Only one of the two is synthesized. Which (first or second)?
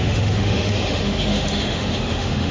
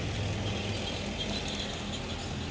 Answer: first